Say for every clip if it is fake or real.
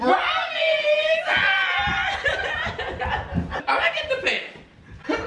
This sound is real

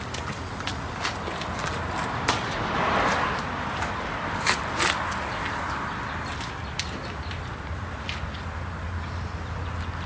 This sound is real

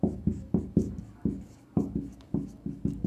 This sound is fake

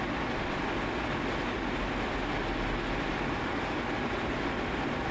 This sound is real